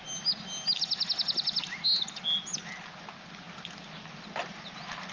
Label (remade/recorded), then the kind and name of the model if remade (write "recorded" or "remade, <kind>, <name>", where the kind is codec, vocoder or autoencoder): recorded